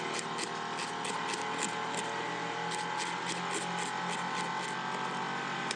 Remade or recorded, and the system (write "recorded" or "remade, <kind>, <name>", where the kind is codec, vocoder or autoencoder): recorded